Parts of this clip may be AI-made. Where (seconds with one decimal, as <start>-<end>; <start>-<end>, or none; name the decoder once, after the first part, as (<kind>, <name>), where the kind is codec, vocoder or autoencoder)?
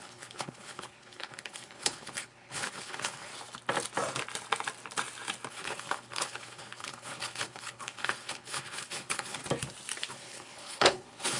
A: 0.0-3.3 (codec, HILCodec); 5.5-9.4; 10.1-11.4